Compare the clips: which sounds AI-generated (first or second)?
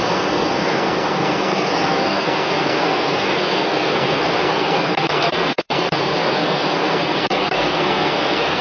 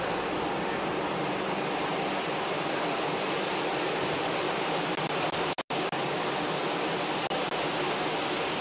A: first